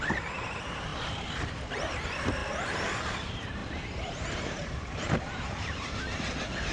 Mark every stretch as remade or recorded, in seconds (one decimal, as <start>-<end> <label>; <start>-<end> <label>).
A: 0.0-2.4 recorded; 2.4-3.0 remade; 3.0-3.6 recorded; 3.6-6.1 remade; 6.1-6.7 recorded